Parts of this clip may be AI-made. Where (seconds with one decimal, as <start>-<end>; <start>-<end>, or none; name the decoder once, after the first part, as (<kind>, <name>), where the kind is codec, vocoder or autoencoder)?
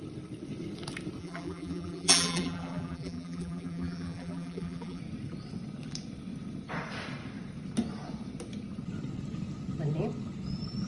1.2-5.0 (vocoder, BigVGAN v2)